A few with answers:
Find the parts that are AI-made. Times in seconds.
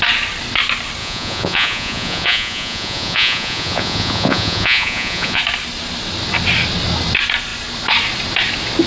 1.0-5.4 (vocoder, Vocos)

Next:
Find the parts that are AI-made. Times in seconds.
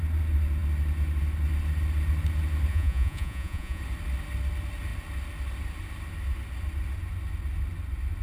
2.7-3.8 (vocoder, Vocos)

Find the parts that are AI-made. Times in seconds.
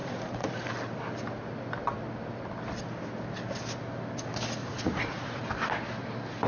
0.0-0.5 (vocoder, Vocos); 4.6-5.4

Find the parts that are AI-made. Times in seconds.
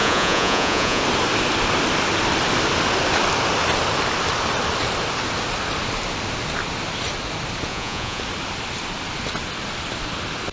0.0-1.0 (vocoder, Vocos); 7.7-8.2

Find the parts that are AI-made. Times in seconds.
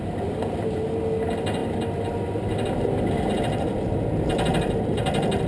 none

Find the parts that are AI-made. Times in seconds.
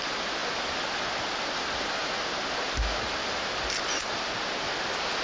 none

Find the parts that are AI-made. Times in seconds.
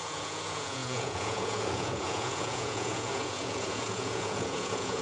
0.0-5.0 (vocoder, Vocos)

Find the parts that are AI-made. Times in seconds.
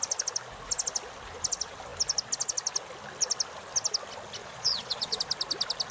4.4-5.2 (vocoder, Vocos)